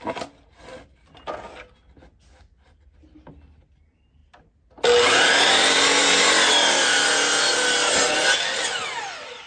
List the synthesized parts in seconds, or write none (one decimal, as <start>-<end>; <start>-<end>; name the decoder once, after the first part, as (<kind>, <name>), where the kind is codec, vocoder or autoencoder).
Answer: none